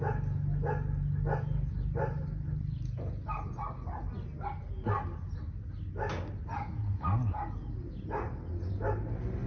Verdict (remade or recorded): recorded